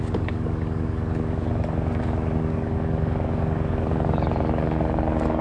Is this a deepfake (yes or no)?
yes